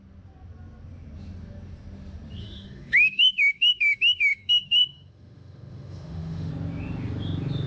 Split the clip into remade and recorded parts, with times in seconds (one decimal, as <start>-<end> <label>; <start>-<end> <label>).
0.0-2.4 recorded; 2.4-6.5 remade; 6.5-7.7 recorded